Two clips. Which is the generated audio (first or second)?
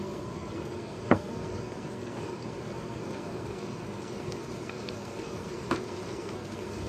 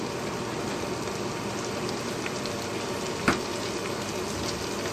first